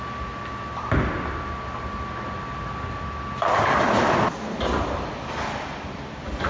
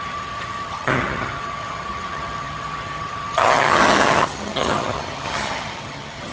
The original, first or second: first